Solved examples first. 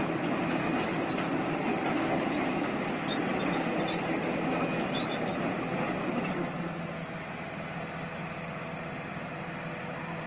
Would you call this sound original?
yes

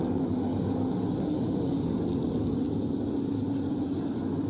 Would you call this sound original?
yes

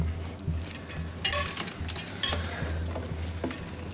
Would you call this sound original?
yes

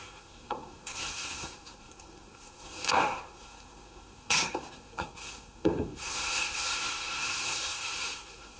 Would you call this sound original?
no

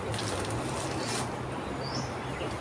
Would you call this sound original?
yes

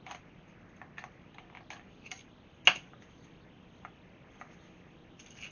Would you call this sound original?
yes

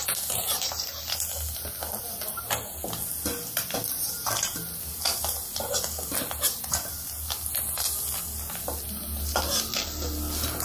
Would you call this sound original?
yes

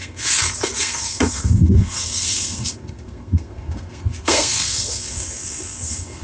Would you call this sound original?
no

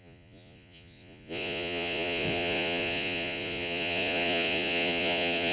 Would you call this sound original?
no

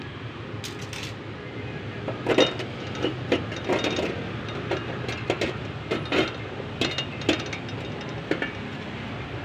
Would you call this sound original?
yes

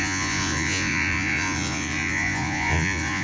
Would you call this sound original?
no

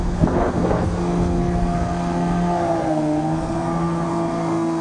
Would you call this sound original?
no